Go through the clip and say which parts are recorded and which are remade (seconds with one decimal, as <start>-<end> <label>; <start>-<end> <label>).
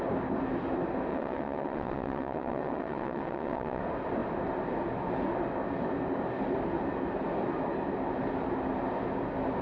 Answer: 0.0-1.1 recorded; 1.1-3.8 remade; 3.8-9.6 recorded